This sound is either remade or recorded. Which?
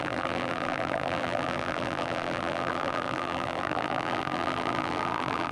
remade